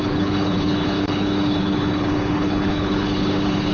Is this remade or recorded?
remade